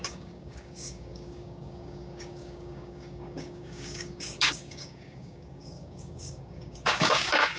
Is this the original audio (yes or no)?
no